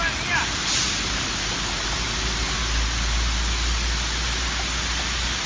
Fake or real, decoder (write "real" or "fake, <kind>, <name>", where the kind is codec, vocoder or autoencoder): real